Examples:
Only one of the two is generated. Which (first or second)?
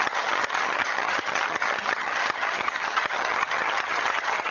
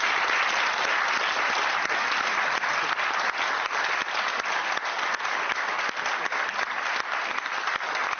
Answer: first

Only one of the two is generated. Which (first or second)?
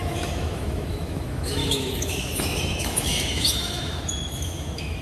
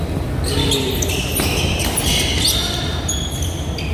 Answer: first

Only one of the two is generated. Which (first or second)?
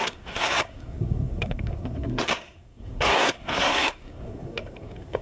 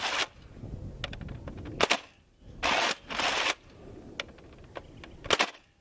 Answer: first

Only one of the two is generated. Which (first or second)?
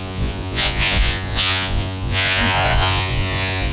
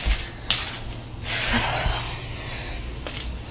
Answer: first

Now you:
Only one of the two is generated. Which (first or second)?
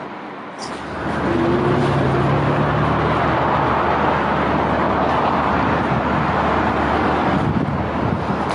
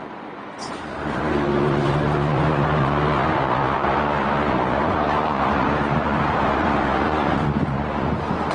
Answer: second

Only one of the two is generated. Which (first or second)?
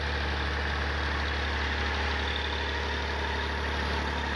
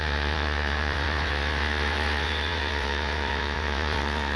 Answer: second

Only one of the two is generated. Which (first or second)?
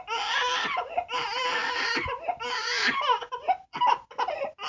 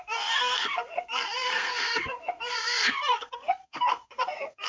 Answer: second